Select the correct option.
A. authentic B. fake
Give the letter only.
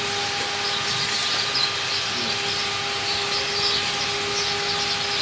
A